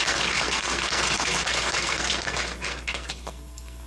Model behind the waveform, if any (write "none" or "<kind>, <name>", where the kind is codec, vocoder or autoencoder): codec, SNAC